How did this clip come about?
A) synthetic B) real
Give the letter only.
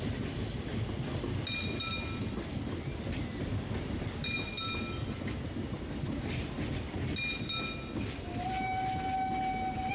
B